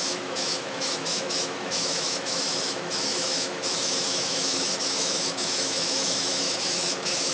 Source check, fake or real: fake